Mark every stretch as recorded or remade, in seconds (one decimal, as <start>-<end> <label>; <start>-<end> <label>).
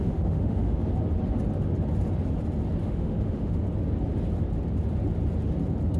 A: 0.0-0.8 remade; 0.8-2.8 recorded; 2.8-3.6 remade; 3.6-6.0 recorded